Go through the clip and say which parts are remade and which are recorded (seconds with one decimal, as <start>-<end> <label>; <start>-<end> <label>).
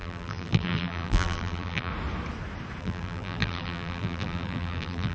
0.0-1.9 remade; 1.9-2.8 recorded; 2.8-5.1 remade